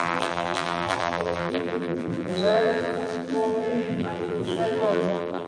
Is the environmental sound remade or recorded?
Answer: remade